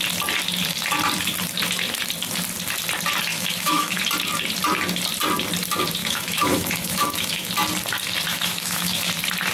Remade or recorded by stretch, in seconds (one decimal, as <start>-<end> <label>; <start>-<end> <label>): 0.0-3.3 recorded; 3.3-4.0 remade; 4.0-6.0 recorded; 6.0-7.5 remade; 7.5-8.3 recorded; 8.3-9.1 remade; 9.1-9.5 recorded